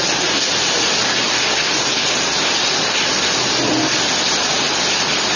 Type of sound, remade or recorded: recorded